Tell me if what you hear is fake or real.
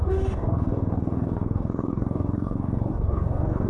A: fake